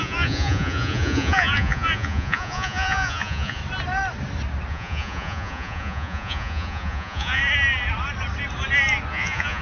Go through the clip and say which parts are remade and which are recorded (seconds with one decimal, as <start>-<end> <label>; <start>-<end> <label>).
0.0-3.6 remade; 3.6-4.7 recorded; 4.7-7.4 remade; 7.4-9.1 recorded; 9.1-9.6 remade